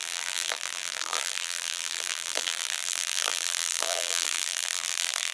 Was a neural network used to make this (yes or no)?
yes